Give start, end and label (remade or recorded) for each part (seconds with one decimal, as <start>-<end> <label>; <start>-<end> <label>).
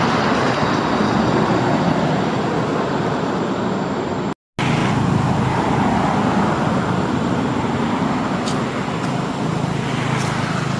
0.0-10.8 recorded